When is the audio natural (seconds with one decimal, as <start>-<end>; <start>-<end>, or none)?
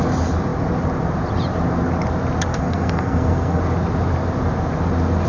0.0-2.5; 3.6-5.3